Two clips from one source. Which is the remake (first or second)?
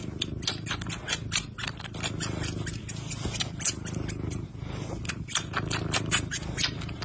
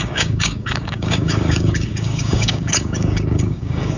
second